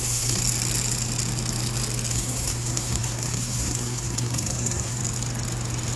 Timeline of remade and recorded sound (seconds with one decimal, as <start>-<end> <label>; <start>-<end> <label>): 0.0-0.4 remade; 0.4-2.1 recorded; 2.1-5.0 remade; 5.0-6.0 recorded